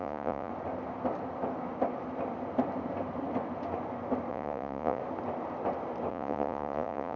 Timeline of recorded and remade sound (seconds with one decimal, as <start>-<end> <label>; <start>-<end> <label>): 0.0-0.5 remade; 0.5-4.3 recorded; 4.3-5.0 remade; 5.0-6.1 recorded; 6.1-7.2 remade

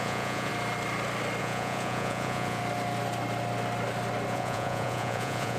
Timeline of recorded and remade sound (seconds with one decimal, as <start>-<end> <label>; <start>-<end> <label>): 0.0-0.5 remade; 0.5-1.4 recorded; 1.4-2.6 remade; 2.6-4.3 recorded; 4.3-5.6 remade

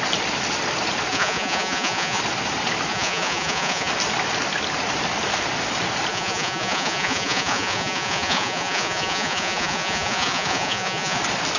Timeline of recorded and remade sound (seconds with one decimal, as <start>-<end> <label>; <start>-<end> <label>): 0.0-1.1 recorded; 1.1-2.2 remade; 2.2-2.9 recorded; 2.9-3.9 remade; 3.9-6.1 recorded; 6.1-11.2 remade; 11.2-11.6 recorded